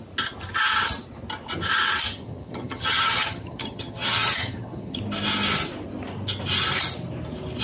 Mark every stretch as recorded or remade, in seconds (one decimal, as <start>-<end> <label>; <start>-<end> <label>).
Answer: 0.0-2.1 recorded; 2.1-5.0 remade; 5.0-7.6 recorded